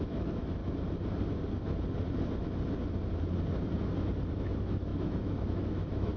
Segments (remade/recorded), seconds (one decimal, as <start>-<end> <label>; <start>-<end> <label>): 0.0-0.6 remade; 0.6-4.3 recorded; 4.3-6.2 remade